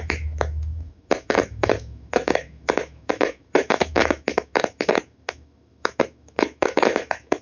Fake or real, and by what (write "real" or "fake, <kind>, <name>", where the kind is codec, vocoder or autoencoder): fake, autoencoder, DAC-VAE